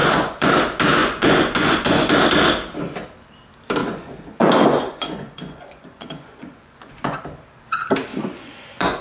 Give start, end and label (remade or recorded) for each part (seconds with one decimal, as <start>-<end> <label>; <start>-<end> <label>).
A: 0.0-0.5 remade; 0.5-1.0 recorded; 1.0-2.1 remade; 2.1-3.8 recorded; 3.8-7.2 remade; 7.2-8.1 recorded; 8.1-9.0 remade